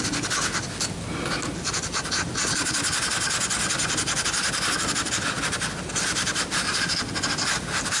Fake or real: real